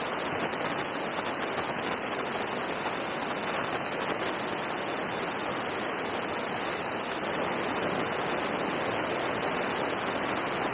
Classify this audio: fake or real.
real